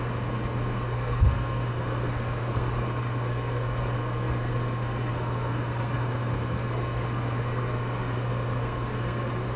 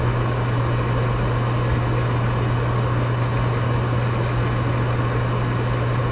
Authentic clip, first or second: second